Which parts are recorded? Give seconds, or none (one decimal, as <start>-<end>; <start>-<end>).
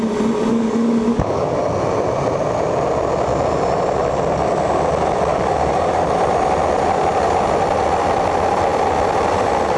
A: 0.0-0.5; 1.6-5.3; 6.0-9.8